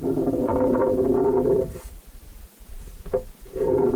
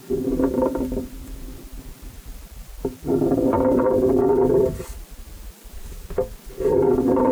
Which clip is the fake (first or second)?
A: first